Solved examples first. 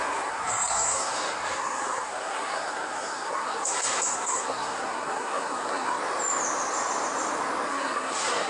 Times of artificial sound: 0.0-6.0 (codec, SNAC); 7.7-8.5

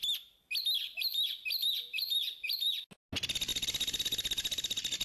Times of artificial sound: none

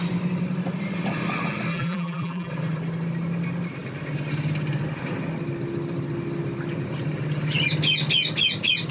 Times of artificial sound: 1.7-2.5 (vocoder, BigVGAN v2)

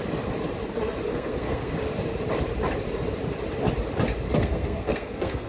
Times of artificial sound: 1.1-1.7 (codec, SNAC); 4.3-5.5